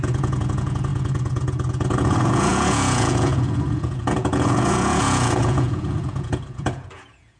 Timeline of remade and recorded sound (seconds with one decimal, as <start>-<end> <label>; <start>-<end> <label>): 0.0-7.4 remade